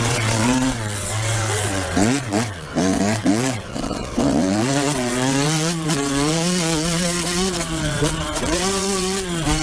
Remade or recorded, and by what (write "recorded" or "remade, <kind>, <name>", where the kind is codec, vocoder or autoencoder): remade, vocoder, WaveNeXt